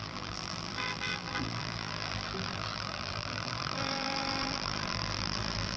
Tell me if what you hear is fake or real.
fake